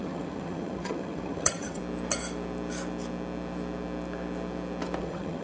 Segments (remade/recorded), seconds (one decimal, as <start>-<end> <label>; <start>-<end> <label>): 0.0-1.8 remade; 1.8-5.0 recorded; 5.0-5.4 remade